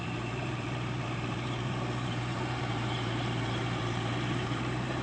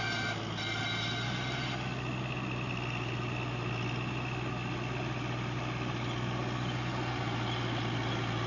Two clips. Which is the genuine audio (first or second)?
second